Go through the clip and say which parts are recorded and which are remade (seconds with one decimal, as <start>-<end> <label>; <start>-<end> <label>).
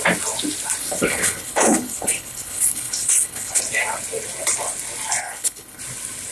0.0-0.8 recorded; 0.8-3.6 remade; 3.6-5.2 recorded; 5.2-5.8 remade; 5.8-6.3 recorded